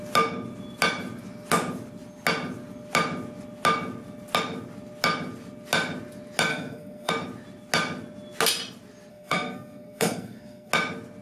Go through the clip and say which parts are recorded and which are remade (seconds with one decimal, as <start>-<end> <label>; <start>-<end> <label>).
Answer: 0.0-6.5 recorded; 6.5-7.1 remade; 7.1-9.1 recorded; 9.1-10.7 remade; 10.7-11.2 recorded

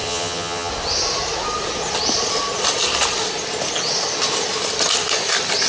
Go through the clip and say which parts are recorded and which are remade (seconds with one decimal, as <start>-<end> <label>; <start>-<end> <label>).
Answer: 0.0-0.7 remade; 0.7-5.7 recorded